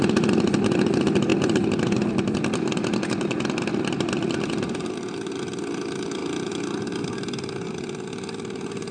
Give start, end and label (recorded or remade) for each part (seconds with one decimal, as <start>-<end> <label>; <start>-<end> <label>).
0.0-8.9 recorded